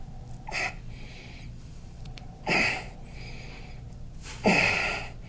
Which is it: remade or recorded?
remade